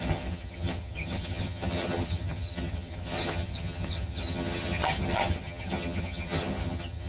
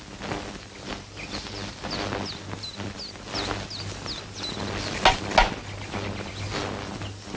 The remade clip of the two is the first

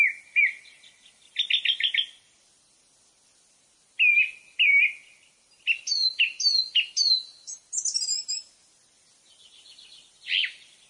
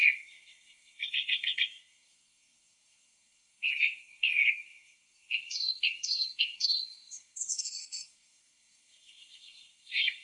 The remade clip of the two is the second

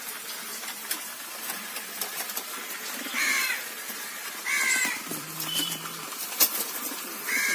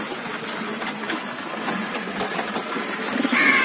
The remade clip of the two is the first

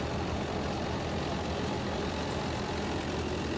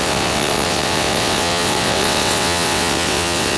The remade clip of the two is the second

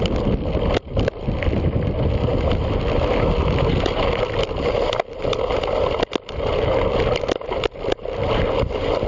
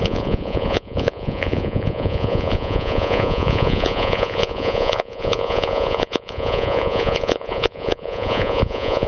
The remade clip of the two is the second